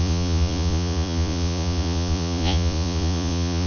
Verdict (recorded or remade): remade